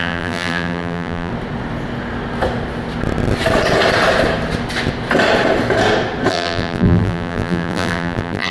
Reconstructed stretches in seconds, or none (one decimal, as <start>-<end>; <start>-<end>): 0.0-1.3; 6.3-8.5